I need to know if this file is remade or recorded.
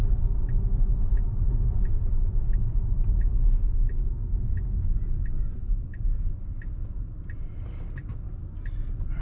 recorded